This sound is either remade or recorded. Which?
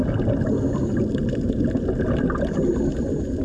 recorded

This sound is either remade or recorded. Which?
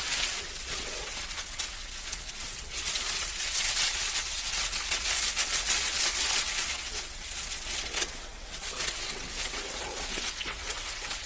remade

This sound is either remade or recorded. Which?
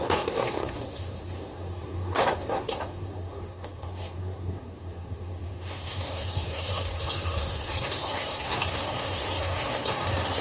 remade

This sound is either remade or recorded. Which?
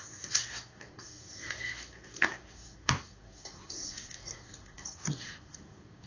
remade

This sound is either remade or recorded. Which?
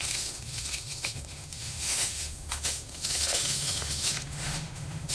remade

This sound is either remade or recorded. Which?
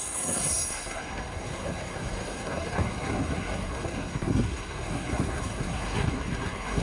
remade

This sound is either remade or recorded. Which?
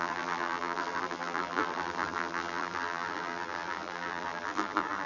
remade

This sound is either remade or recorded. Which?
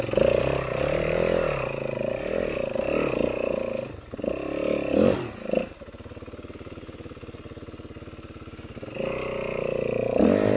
recorded